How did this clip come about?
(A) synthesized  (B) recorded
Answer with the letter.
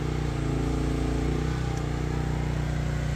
B